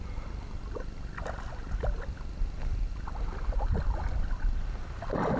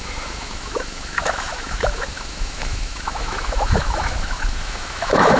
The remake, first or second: second